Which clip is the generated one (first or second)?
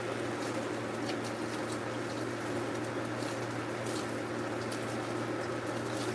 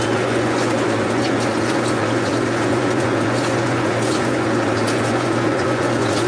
second